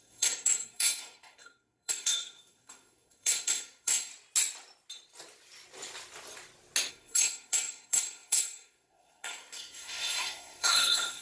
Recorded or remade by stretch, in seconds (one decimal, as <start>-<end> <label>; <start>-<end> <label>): 0.0-4.1 remade; 4.1-6.9 recorded; 6.9-11.2 remade